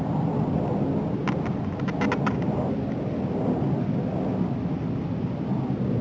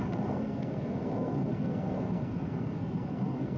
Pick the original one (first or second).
first